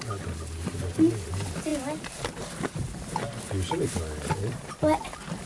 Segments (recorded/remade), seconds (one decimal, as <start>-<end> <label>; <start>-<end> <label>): 0.0-5.5 recorded